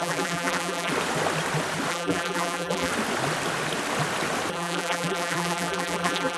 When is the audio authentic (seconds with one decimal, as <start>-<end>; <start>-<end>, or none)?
0.9-1.9; 2.9-4.5